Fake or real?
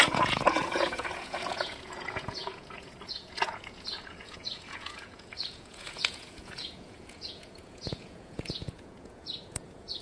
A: fake